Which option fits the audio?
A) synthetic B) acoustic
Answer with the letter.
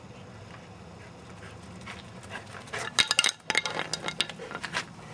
B